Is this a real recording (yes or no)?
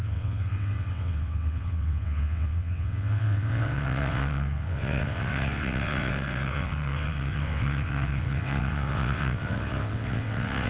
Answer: no